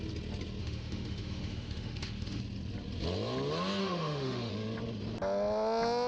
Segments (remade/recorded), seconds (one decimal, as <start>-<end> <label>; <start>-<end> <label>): 0.0-0.6 recorded; 0.6-2.4 remade; 2.4-3.8 recorded; 3.8-4.5 remade; 4.5-6.1 recorded

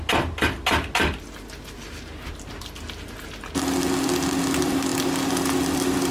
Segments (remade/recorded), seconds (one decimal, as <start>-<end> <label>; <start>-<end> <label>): 0.0-6.1 recorded

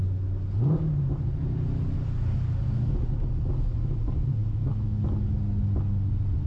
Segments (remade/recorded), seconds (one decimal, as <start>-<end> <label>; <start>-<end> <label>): 0.0-4.4 recorded; 4.4-5.1 remade; 5.1-6.5 recorded

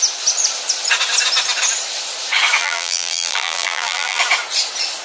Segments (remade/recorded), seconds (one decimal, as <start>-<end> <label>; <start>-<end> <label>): 0.0-2.6 recorded; 2.6-4.2 remade; 4.2-5.0 recorded

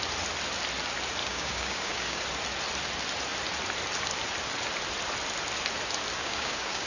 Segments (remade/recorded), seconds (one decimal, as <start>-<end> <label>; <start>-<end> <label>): 0.0-1.2 recorded; 1.2-2.2 remade; 2.2-6.2 recorded; 6.2-6.9 remade

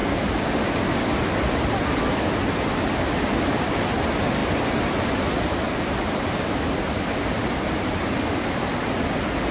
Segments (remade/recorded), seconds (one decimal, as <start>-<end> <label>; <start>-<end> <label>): 0.0-9.5 recorded

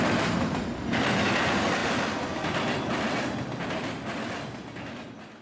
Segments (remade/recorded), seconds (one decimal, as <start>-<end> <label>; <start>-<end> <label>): 0.0-5.4 recorded